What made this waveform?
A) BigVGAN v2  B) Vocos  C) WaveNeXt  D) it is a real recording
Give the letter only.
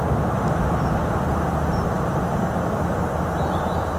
D